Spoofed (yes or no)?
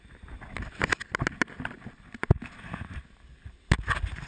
no